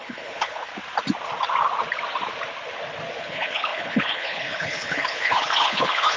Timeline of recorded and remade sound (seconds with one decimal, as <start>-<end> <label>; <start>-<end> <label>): 0.0-0.7 remade; 0.7-3.2 recorded; 3.2-6.2 remade